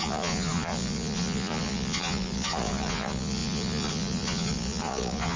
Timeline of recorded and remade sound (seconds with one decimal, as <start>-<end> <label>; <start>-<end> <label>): 0.0-5.4 remade